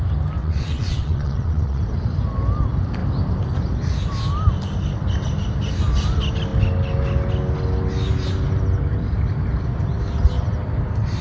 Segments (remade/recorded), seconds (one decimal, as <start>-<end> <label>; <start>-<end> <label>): 0.0-0.4 recorded; 0.4-1.8 remade; 1.8-11.2 recorded